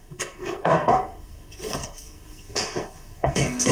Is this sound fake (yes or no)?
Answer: yes